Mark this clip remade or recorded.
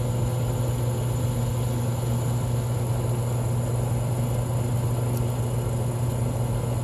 recorded